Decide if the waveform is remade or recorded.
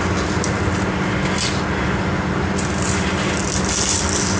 recorded